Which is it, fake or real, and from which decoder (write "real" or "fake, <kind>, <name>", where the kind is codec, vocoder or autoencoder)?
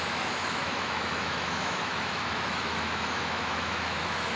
fake, autoencoder, DAC-VAE